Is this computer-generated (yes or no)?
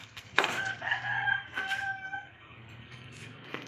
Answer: yes